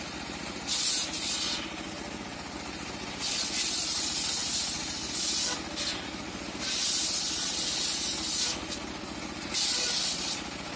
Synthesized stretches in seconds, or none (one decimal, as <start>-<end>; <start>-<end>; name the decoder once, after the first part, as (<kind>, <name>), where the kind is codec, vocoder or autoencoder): none